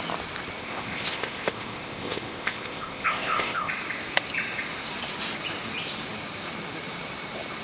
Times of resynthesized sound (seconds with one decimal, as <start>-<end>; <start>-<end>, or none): 0.6-3.7